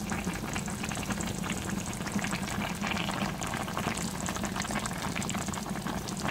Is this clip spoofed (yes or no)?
no